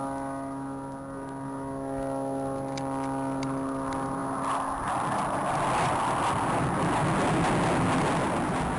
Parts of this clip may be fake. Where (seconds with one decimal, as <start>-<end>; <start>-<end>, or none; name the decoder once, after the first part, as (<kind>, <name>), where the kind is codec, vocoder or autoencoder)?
none